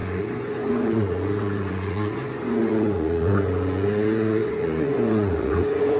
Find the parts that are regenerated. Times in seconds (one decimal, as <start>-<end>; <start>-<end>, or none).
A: 0.0-6.0